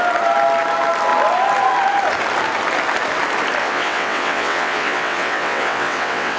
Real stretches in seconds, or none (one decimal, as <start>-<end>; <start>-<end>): 0.0-3.6

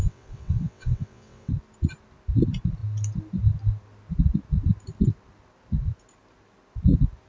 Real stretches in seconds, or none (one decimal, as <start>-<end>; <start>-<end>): 1.5-7.3

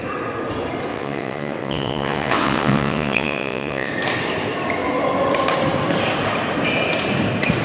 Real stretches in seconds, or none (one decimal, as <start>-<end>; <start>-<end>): 0.0-0.9; 3.9-7.6

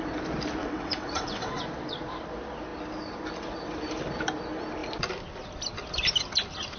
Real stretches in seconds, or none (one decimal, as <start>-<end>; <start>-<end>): 0.0-0.6; 1.6-6.8